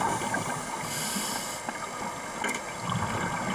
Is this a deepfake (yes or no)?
no